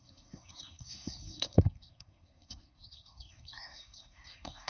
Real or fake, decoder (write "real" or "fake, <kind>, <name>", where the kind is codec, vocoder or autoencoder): fake, codec, SNAC